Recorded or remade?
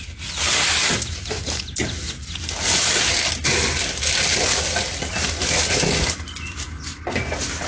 recorded